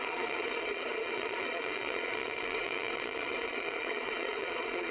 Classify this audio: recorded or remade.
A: remade